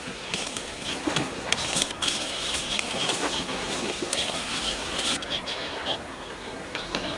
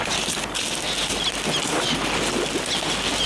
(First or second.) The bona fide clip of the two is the second